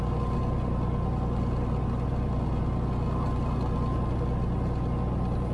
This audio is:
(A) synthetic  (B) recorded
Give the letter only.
B